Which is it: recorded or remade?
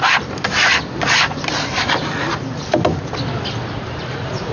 recorded